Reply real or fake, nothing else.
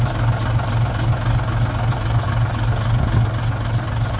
real